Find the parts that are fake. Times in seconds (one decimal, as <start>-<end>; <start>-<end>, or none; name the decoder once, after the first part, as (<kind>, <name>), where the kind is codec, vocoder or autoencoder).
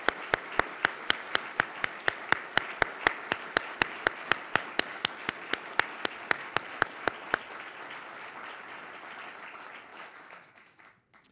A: 9.9-10.8 (autoencoder, DAC-VAE)